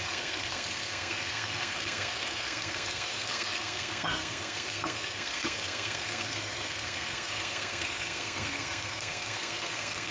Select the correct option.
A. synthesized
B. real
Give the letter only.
A